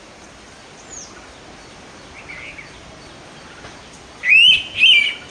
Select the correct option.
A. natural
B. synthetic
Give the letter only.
A